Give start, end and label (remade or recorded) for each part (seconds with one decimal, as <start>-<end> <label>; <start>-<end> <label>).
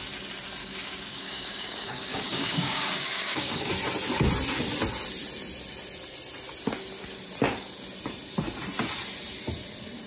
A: 0.0-0.6 recorded; 0.6-3.7 remade; 3.7-10.1 recorded